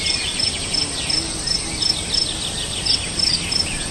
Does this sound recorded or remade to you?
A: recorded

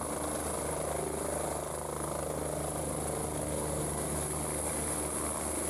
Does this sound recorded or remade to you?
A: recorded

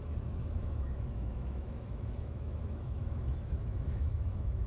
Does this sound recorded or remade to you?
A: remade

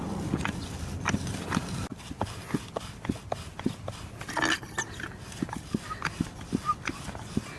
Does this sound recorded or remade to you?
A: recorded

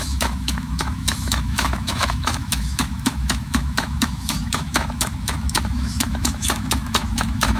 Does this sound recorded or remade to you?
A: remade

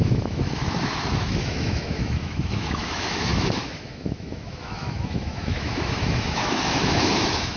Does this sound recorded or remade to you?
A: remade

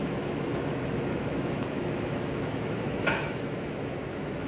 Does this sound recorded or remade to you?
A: remade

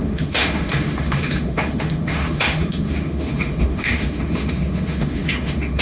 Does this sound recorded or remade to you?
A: remade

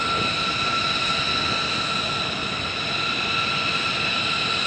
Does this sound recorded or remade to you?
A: recorded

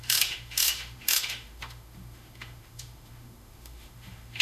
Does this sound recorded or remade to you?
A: remade